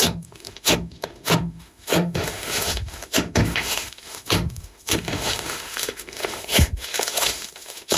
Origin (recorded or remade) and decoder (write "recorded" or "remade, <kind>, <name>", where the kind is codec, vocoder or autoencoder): remade, autoencoder, DAC-VAE